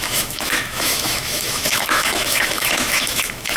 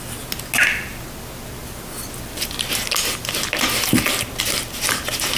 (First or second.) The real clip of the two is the second